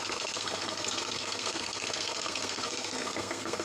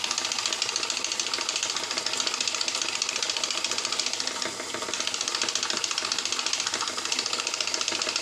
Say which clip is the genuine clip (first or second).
second